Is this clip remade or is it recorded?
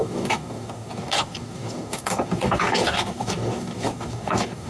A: remade